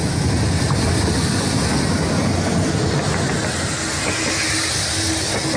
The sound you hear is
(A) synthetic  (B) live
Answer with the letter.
B